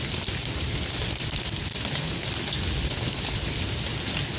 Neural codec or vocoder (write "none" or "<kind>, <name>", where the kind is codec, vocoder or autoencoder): none